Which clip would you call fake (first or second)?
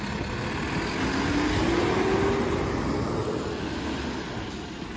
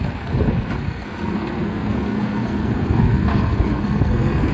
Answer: second